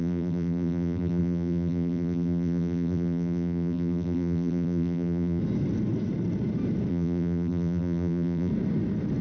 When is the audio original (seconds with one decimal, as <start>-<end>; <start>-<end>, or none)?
5.4-6.9; 8.5-9.2